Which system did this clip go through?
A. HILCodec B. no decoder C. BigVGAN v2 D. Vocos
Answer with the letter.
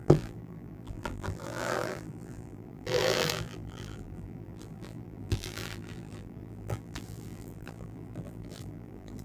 C